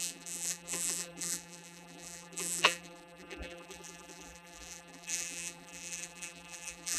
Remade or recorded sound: remade